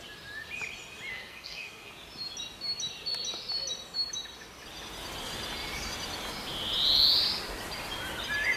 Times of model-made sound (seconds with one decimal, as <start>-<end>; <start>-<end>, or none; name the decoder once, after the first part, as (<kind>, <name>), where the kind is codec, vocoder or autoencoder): 1.1-1.9 (codec, SNAC)